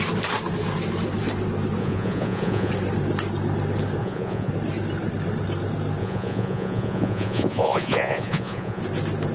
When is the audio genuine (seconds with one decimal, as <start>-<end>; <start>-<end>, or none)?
0.0-1.8; 2.7-4.0; 4.5-6.0; 8.8-9.3